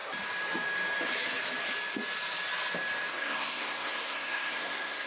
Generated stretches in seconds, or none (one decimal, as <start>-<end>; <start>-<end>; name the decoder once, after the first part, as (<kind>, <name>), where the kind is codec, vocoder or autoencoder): 3.1-5.1 (codec, SNAC)